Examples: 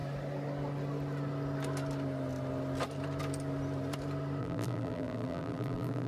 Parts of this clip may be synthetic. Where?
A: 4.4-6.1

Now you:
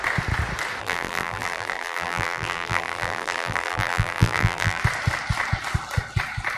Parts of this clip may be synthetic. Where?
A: 0.8-4.8